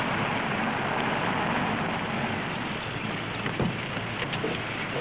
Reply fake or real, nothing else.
real